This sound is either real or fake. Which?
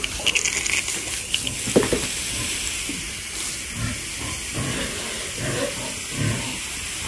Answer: real